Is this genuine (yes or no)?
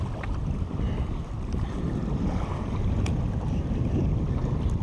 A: yes